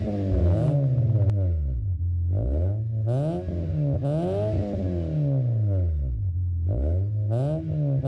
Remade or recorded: recorded